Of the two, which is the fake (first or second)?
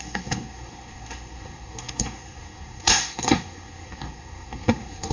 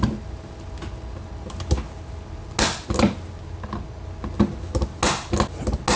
first